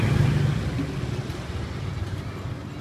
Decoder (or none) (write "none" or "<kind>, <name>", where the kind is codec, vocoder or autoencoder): none